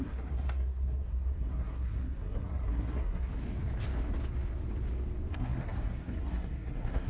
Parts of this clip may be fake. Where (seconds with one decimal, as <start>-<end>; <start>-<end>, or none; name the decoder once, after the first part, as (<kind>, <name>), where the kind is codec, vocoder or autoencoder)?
0.0-3.3 (codec, SNAC); 5.3-7.1